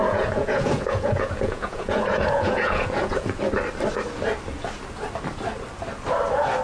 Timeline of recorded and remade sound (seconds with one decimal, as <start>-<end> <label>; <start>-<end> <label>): 0.0-3.4 remade; 3.4-6.6 recorded